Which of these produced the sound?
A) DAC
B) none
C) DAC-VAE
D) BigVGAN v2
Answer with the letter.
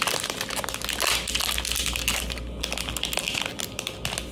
B